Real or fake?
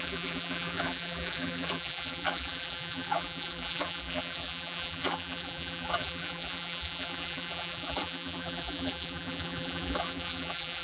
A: fake